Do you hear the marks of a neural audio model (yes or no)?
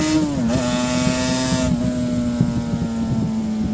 no